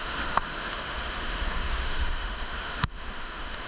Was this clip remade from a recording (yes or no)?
yes